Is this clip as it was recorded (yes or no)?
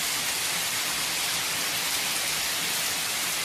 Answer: yes